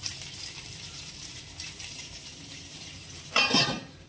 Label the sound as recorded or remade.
remade